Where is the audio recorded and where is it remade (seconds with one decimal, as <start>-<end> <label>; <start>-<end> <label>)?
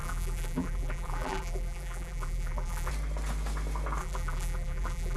0.0-2.9 remade; 2.9-4.0 recorded; 4.0-5.2 remade